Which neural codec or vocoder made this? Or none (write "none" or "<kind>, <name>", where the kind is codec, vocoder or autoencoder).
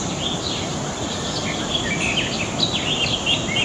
none